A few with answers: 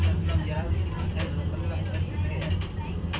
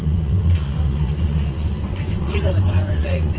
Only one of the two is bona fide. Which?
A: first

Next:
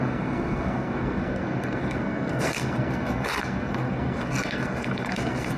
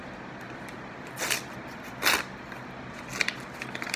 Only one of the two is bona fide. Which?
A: second